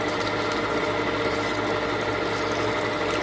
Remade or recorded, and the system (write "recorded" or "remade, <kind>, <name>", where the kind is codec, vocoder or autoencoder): recorded